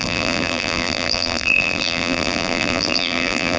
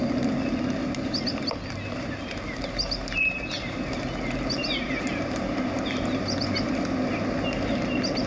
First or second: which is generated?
first